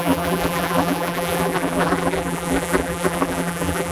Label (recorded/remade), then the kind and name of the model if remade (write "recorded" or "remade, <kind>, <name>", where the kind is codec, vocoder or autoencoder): remade, vocoder, BigVGAN v2